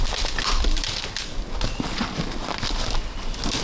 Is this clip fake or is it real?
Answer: real